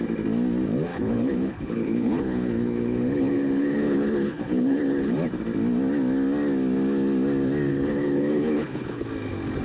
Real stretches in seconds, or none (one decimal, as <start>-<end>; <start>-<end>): 0.0-0.9; 5.1-7.7; 9.0-9.6